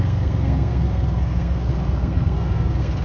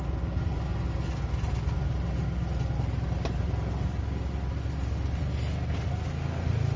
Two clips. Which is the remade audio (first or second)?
first